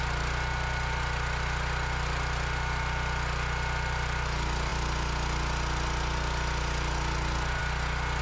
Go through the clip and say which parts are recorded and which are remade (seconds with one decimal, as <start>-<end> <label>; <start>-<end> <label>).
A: 0.0-8.2 recorded